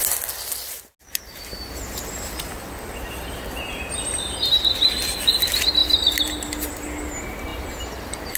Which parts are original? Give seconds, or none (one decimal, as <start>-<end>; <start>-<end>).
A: 0.0-8.4